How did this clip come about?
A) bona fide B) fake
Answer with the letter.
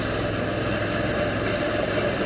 A